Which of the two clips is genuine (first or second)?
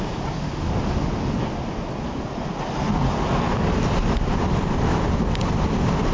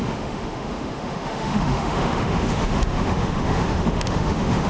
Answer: first